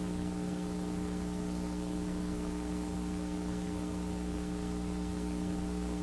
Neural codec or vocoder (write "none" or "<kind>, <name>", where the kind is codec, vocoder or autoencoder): codec, SNAC